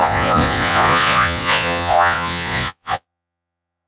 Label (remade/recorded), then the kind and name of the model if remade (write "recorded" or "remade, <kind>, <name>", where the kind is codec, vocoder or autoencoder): remade, vocoder, Vocos